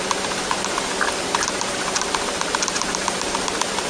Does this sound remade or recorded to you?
remade